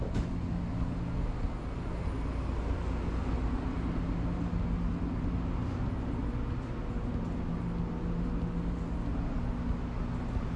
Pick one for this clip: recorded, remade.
recorded